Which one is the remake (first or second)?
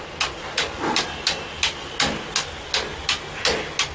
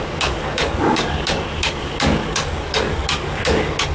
second